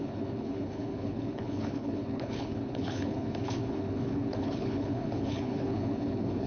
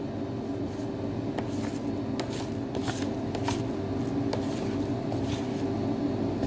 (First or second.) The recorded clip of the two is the second